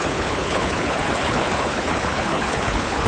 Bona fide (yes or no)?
no